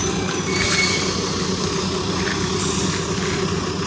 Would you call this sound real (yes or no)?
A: yes